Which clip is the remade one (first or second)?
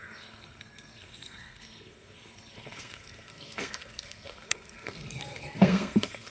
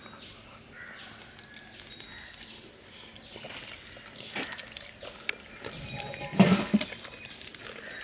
first